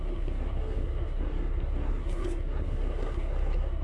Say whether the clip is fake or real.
fake